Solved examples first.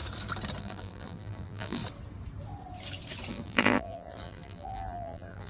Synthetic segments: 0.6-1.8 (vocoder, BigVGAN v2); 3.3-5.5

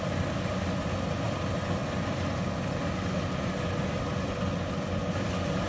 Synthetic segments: none

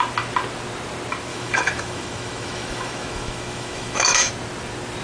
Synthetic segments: 1.3-4.3 (autoencoder, DAC-VAE)

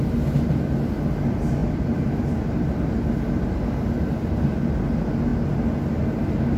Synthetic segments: 1.6-2.4 (vocoder, BigVGAN v2)

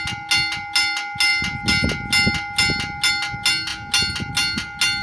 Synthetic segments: none

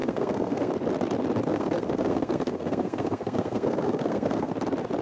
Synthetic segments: 0.0-0.7 (codec, SNAC); 1.5-4.5

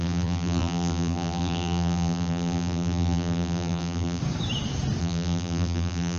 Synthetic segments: 0.0-4.2 (vocoder, BigVGAN v2); 5.0-6.2